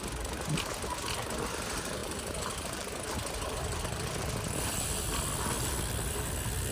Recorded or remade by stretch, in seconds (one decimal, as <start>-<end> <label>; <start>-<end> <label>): 0.0-2.0 recorded; 2.0-3.8 remade; 3.8-6.7 recorded